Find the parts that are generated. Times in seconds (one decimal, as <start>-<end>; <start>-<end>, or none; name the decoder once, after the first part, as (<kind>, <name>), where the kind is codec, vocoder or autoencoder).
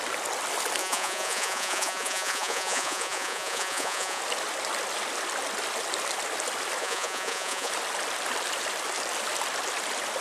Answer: 0.8-4.2 (vocoder, Vocos); 6.8-7.7